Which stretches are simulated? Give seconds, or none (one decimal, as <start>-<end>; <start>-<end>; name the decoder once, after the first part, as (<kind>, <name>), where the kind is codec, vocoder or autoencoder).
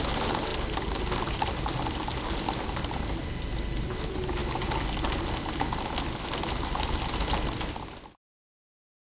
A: none